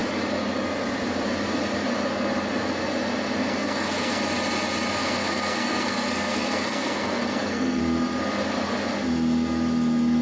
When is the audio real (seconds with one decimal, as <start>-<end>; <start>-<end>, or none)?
0.0-3.4; 4.2-5.0; 7.8-10.2